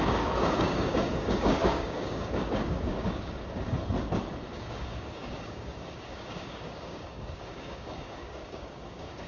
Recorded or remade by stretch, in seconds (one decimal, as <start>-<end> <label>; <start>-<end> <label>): 0.0-3.8 remade; 3.8-4.5 recorded; 4.5-9.3 remade